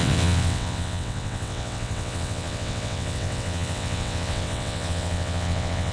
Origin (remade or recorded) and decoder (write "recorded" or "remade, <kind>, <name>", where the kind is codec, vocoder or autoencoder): remade, vocoder, WaveNeXt